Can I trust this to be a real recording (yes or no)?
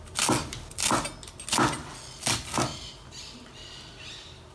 yes